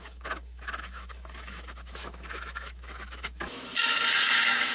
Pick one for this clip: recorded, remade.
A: remade